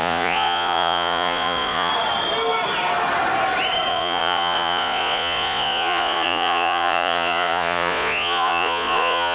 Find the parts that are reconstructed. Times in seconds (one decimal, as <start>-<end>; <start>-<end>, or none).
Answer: 0.0-1.9; 3.9-9.3